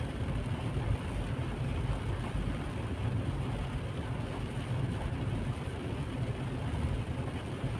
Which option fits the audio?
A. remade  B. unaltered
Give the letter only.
B